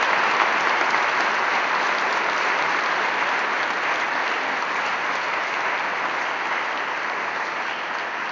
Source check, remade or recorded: recorded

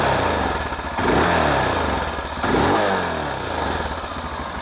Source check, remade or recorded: recorded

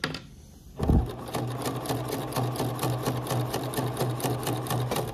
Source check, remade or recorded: recorded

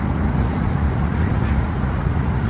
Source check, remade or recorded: remade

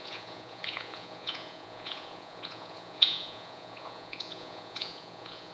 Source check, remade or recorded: remade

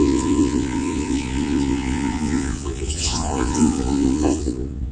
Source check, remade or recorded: remade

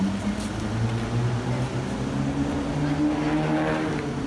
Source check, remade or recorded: recorded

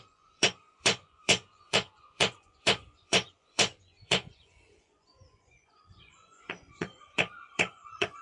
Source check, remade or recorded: remade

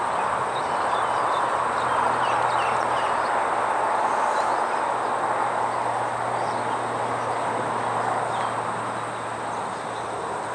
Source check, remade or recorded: recorded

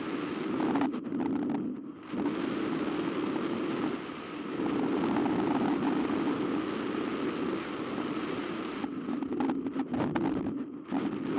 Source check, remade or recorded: recorded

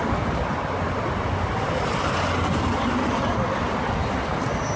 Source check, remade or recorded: recorded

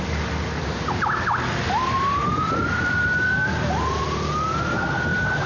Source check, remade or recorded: recorded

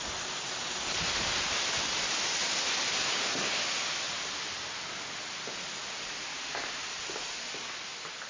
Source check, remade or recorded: recorded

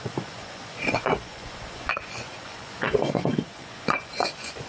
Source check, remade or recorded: remade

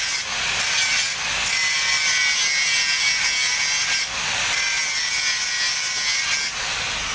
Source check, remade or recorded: recorded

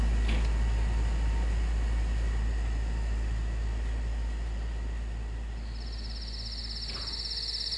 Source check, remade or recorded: recorded